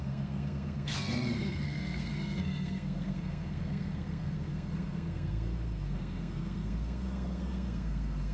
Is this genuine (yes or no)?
no